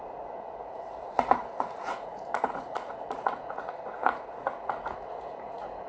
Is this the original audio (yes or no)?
no